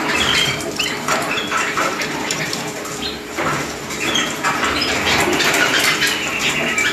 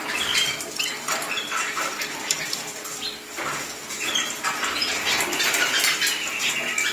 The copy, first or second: first